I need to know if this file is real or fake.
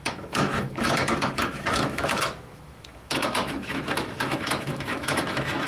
fake